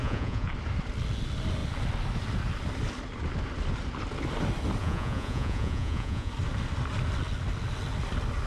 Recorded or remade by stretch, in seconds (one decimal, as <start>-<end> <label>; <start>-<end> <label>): 0.0-0.5 remade; 0.5-4.8 recorded; 4.8-6.3 remade; 6.3-8.5 recorded